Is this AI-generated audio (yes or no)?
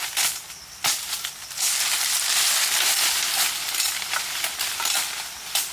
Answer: no